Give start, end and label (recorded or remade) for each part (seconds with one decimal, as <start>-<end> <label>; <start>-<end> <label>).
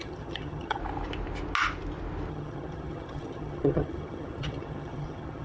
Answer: 0.0-0.8 remade; 0.8-2.3 recorded; 2.3-5.4 remade